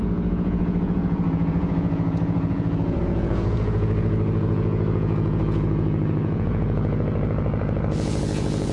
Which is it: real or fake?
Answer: fake